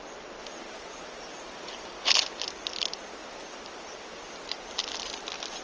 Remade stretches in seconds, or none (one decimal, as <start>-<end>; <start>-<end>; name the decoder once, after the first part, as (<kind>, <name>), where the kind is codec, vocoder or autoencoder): 0.4-1.6 (vocoder, BigVGAN v2); 3.2-4.6

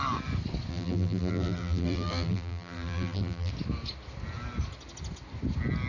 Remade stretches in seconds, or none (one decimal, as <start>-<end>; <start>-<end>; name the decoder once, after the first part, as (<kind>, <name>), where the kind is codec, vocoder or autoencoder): 0.7-3.5 (vocoder, BigVGAN v2)